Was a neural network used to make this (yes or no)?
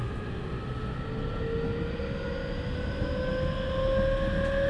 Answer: no